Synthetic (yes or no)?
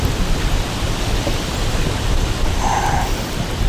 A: no